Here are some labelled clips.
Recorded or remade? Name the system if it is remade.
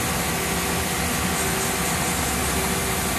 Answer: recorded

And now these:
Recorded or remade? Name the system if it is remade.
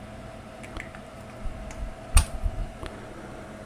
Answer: recorded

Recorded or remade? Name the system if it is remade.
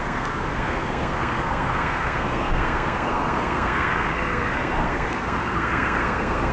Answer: remade, codec, SNAC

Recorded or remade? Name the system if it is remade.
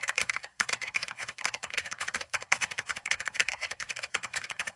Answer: remade, codec, SNAC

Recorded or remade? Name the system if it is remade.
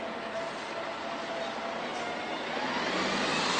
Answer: recorded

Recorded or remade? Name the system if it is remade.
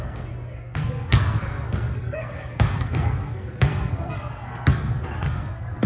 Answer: remade, codec, SNAC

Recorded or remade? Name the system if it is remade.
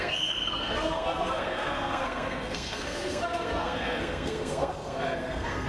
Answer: remade, codec, SNAC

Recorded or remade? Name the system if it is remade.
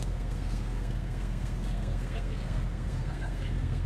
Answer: remade, codec, SNAC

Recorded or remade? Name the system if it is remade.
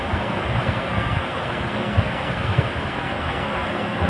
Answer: remade, codec, SNAC